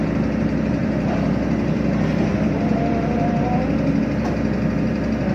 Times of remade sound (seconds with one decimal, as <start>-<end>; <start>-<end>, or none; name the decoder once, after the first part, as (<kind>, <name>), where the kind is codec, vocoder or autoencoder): 0.8-4.0 (vocoder, BigVGAN v2)